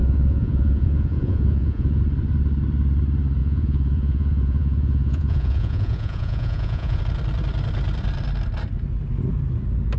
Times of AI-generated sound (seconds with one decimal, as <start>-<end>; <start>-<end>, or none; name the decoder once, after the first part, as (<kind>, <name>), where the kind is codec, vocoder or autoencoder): 0.0-2.0 (vocoder, Vocos); 3.4-7.0